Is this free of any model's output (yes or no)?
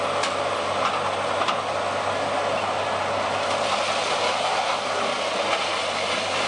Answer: yes